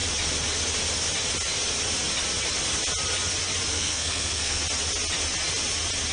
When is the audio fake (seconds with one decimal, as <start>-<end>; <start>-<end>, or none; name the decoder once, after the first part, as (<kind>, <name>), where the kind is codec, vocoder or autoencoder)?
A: 3.7-4.6 (codec, SNAC)